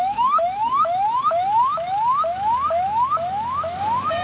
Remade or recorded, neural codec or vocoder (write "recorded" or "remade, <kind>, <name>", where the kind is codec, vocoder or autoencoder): remade, autoencoder, DAC-VAE